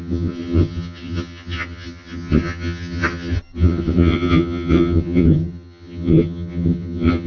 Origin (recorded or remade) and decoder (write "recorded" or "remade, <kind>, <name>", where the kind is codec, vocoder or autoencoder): remade, vocoder, HiFi-GAN